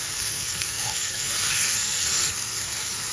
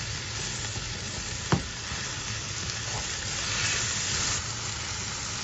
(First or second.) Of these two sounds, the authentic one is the second